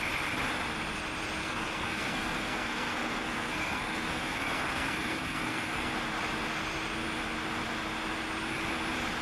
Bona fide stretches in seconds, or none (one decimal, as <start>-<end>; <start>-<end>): 0.0-1.4; 5.9-9.2